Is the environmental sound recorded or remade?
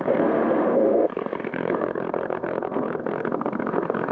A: remade